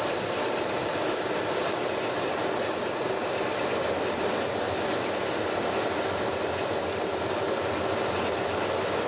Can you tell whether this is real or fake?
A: real